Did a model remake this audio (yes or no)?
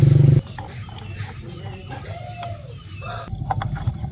no